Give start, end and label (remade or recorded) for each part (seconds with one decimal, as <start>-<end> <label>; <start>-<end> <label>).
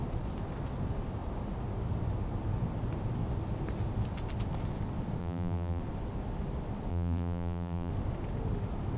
0.0-5.2 recorded; 5.2-5.8 remade; 5.8-6.9 recorded; 6.9-7.9 remade; 7.9-9.0 recorded